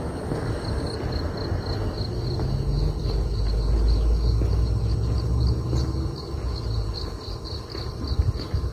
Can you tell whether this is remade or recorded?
recorded